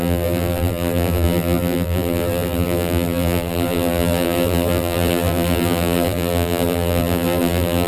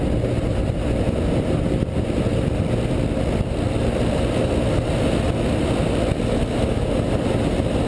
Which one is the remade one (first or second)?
first